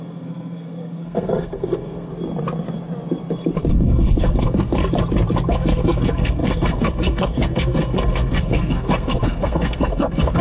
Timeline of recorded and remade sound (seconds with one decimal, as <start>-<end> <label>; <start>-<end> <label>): 0.0-2.1 remade; 2.1-3.7 recorded; 3.7-4.8 remade; 4.8-5.5 recorded; 5.5-10.4 remade